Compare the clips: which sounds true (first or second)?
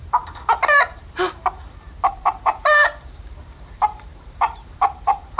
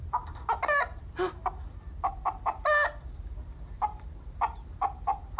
second